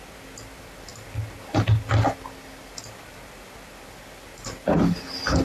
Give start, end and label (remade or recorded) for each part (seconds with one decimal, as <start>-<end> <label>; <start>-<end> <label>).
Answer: 0.0-5.4 recorded